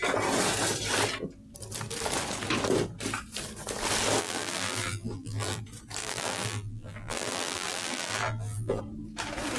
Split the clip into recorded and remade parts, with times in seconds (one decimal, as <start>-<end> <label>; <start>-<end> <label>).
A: 0.0-4.2 recorded; 4.2-5.6 remade; 5.6-6.0 recorded; 6.0-8.8 remade; 8.8-9.6 recorded